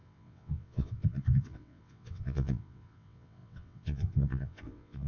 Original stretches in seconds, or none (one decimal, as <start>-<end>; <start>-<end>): none